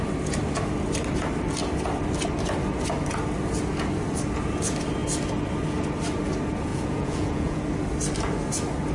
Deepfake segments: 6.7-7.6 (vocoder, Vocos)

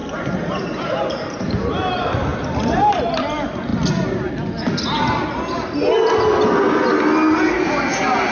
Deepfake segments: 0.0-1.9 (vocoder, BigVGAN v2); 2.3-3.0

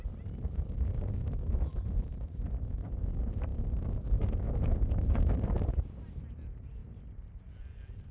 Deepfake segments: none

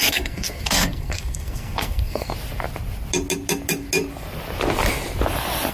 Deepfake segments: 0.0-2.3 (codec, SNAC)